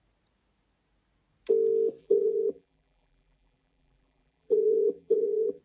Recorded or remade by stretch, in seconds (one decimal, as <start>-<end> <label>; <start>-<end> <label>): 0.0-2.0 recorded; 2.0-5.6 remade